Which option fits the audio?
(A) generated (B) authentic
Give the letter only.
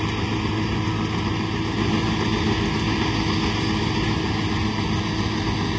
B